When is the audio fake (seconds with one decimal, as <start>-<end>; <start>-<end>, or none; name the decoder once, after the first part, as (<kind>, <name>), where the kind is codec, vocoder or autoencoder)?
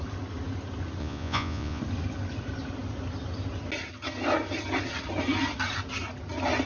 1.0-1.8 (vocoder, Vocos)